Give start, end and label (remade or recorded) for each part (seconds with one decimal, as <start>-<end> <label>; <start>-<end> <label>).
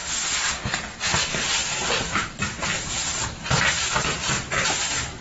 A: 0.0-1.6 recorded; 1.6-4.2 remade; 4.2-5.2 recorded